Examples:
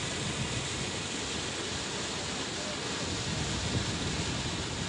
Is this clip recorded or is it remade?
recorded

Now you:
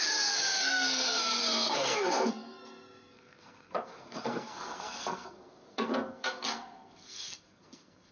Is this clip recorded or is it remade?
remade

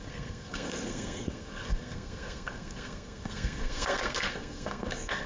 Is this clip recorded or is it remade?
remade